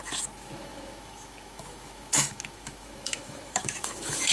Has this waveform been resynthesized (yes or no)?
yes